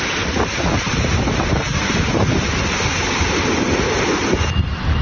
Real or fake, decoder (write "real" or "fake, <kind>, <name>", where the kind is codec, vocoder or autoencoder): real